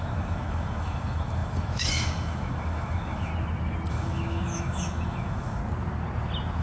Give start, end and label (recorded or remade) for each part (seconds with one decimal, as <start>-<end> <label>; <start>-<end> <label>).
0.0-3.3 remade; 3.3-3.9 recorded; 3.9-5.6 remade; 5.6-6.6 recorded